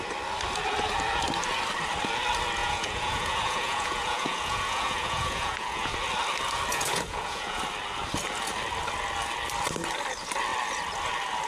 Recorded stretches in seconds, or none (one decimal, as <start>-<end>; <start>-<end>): 0.0-2.6; 5.9-6.7; 7.6-11.5